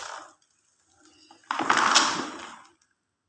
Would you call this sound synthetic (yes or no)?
no